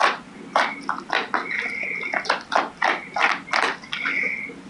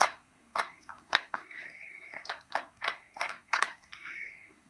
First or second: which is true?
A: first